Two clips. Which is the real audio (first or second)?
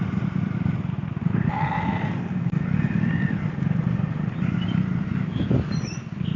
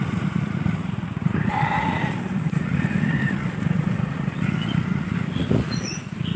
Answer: first